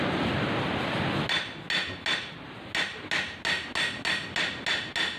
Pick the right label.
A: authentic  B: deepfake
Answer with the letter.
A